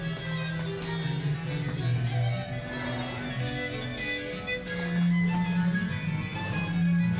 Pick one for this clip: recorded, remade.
recorded